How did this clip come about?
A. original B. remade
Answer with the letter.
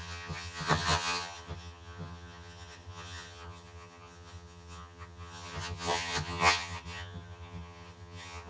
B